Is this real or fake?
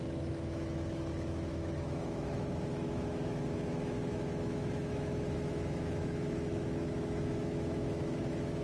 fake